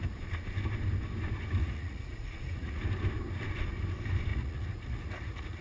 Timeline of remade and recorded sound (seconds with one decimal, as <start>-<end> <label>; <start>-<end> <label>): 0.0-1.6 recorded; 1.6-2.8 remade; 2.8-4.3 recorded; 4.3-5.6 remade